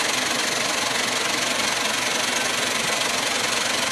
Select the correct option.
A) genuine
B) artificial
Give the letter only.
A